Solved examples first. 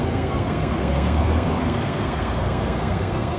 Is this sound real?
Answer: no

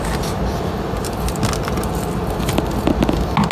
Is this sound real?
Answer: yes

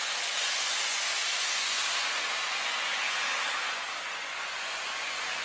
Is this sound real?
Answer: no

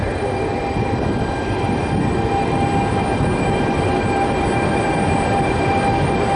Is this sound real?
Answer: yes